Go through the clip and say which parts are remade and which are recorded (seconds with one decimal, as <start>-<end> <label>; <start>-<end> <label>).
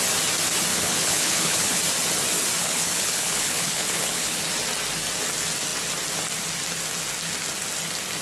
0.0-0.7 recorded; 0.7-1.8 remade; 1.8-2.6 recorded; 2.6-4.4 remade; 4.4-8.2 recorded